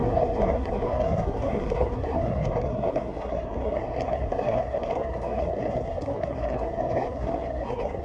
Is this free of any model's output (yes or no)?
no